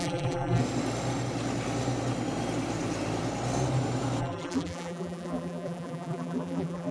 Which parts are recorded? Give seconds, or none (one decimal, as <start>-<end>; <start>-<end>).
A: 0.6-4.2